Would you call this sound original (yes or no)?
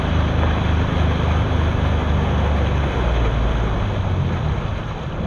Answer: yes